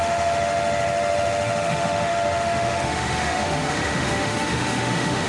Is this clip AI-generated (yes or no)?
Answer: yes